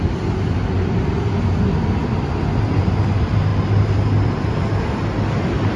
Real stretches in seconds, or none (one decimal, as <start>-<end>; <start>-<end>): 0.0-5.8